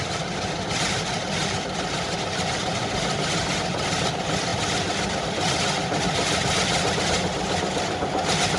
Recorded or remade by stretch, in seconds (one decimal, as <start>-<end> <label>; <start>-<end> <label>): 0.0-8.6 recorded